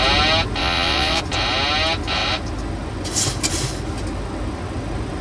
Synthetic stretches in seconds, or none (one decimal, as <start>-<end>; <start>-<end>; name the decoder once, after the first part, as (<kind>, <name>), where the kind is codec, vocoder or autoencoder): 0.6-1.2 (vocoder, WaveNeXt)

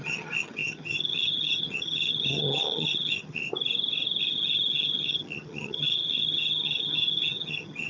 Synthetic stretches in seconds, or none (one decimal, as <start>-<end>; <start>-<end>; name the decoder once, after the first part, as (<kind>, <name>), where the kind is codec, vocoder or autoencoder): 0.0-3.4 (vocoder, HiFi-GAN); 4.2-7.9

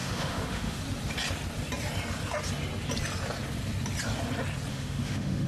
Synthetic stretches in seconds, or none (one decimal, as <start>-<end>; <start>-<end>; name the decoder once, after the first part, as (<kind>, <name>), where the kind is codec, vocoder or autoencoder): 0.0-0.8 (autoencoder, DAC-VAE); 4.7-5.5

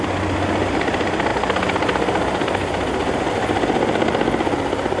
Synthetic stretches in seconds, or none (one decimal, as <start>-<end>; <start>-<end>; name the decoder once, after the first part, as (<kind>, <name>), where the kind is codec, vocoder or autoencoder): none

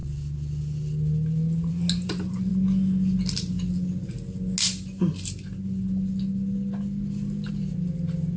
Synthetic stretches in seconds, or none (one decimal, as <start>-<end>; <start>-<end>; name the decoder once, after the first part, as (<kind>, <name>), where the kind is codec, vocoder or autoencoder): none

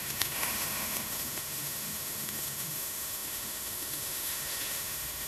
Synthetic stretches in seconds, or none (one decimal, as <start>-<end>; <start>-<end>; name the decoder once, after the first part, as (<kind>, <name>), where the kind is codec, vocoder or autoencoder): 0.0-5.3 (autoencoder, DAC-VAE)

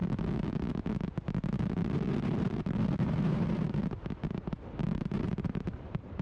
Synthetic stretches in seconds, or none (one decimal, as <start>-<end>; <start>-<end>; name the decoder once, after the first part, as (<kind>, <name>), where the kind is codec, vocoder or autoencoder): 1.8-3.8 (vocoder, BigVGAN v2); 4.8-6.2